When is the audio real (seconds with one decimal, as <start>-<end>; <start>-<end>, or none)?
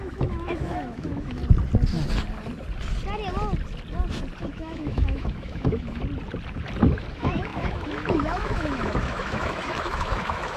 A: 1.4-4.4; 6.0-7.1